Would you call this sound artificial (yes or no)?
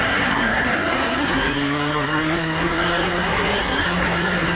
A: yes